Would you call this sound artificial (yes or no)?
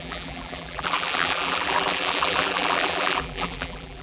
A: yes